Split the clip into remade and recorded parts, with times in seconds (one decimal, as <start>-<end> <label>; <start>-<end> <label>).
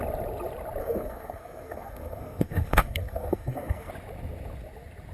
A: 0.0-0.8 recorded; 0.8-3.9 remade; 3.9-5.1 recorded